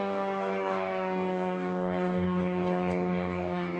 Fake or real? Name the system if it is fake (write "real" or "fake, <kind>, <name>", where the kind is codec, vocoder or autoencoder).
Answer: fake, codec, DAC